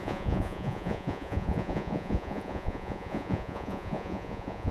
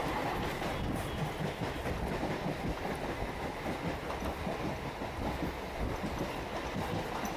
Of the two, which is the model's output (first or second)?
first